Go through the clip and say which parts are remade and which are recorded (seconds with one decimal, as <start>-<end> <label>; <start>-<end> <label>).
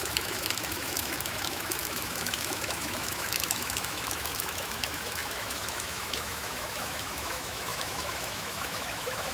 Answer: 0.0-9.3 remade